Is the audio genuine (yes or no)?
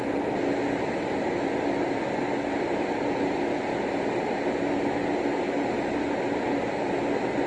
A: yes